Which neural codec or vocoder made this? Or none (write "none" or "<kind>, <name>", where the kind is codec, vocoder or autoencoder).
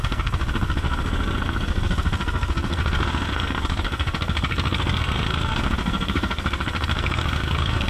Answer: codec, SNAC